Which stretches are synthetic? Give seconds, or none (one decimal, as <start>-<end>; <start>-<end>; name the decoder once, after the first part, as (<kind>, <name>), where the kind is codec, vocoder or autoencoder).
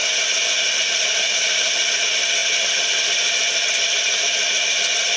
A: none